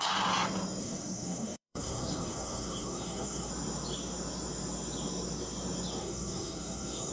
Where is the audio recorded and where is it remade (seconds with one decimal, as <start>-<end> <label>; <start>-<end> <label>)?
0.0-0.8 recorded; 0.8-3.5 remade; 3.5-6.0 recorded; 6.0-7.1 remade